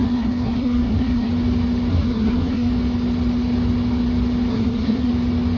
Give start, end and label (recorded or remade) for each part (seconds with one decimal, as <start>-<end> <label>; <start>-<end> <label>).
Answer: 0.0-1.3 remade; 1.3-1.9 recorded; 1.9-2.7 remade; 2.7-4.5 recorded; 4.5-5.1 remade; 5.1-5.6 recorded